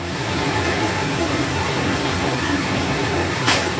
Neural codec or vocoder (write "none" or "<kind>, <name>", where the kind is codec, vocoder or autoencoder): codec, SNAC